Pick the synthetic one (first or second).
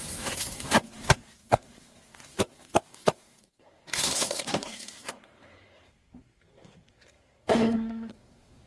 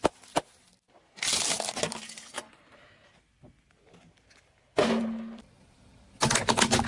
first